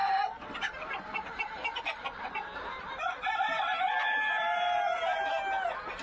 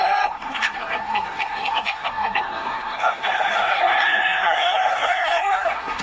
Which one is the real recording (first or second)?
first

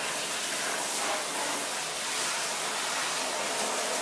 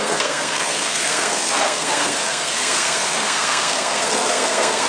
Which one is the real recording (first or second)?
first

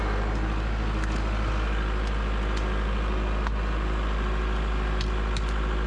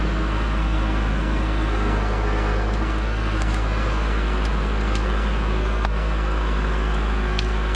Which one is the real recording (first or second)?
first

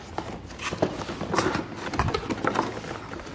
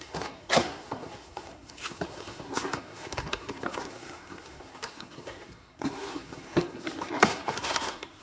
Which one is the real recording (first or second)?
first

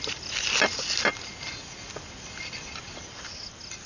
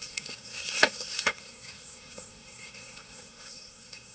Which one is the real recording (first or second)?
first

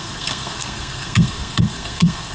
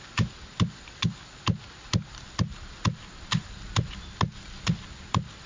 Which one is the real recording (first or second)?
second